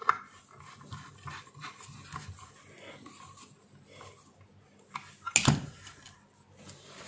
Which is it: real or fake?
real